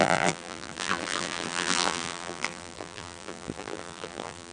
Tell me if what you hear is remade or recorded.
remade